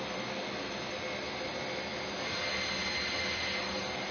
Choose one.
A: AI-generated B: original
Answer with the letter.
B